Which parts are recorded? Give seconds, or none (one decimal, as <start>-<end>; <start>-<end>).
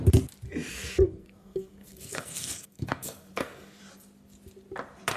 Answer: 0.0-0.7; 3.8-5.2